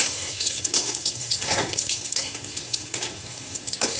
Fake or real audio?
fake